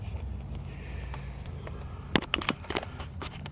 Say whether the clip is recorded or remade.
recorded